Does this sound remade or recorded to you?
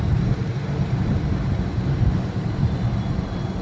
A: remade